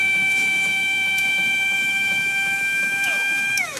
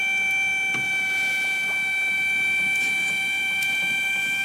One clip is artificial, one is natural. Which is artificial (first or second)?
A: first